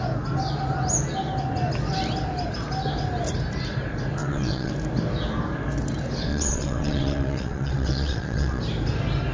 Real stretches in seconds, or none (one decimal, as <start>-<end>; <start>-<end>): 0.0-4.2; 4.7-6.3; 8.6-9.3